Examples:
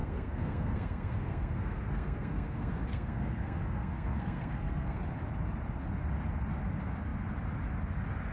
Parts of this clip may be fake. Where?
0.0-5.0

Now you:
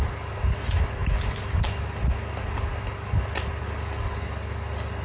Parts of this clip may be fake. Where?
none

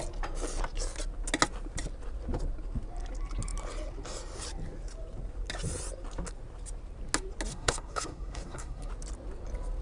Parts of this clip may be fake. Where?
7.5-8.9

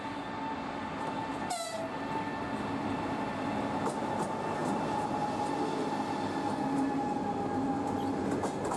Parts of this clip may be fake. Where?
none